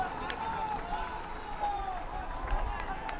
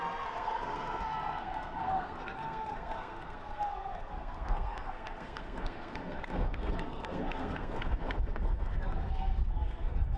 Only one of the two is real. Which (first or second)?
first